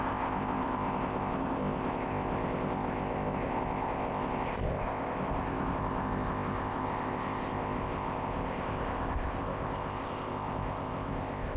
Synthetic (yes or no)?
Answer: yes